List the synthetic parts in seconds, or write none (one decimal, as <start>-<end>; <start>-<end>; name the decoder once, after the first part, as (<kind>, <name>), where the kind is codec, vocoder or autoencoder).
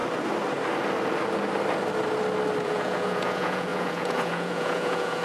2.6-5.2 (vocoder, Vocos)